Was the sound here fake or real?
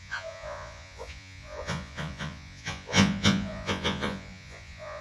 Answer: fake